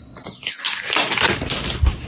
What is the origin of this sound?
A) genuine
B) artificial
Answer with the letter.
A